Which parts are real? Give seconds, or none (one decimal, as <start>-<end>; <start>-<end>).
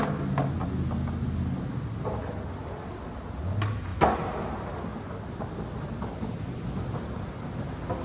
0.0-8.0